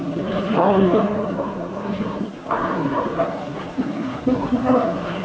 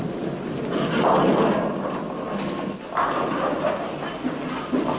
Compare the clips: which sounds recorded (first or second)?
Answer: second